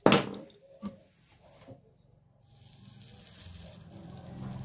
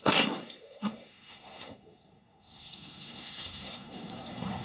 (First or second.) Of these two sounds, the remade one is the second